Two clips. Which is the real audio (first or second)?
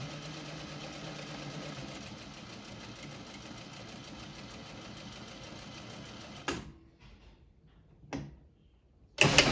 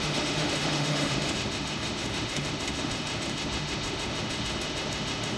first